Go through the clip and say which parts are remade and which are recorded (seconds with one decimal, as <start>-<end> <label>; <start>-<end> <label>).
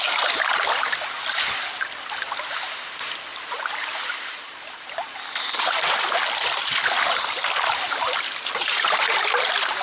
0.0-3.3 recorded; 3.3-6.0 remade; 6.0-9.8 recorded